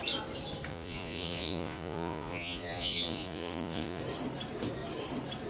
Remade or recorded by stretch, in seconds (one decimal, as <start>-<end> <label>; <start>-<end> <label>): 0.0-0.7 recorded; 0.7-4.0 remade; 4.0-5.5 recorded